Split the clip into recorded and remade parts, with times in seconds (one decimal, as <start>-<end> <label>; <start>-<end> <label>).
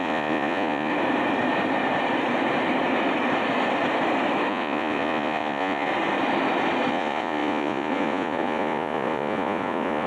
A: 0.0-0.9 remade; 0.9-4.5 recorded; 4.5-5.9 remade; 5.9-6.9 recorded; 6.9-10.1 remade